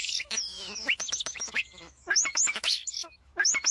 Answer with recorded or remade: remade